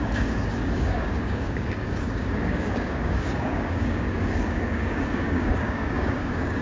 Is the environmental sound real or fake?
fake